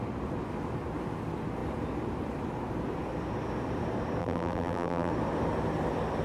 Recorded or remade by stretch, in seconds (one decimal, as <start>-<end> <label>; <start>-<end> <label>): 0.0-4.2 recorded; 4.2-5.1 remade; 5.1-6.2 recorded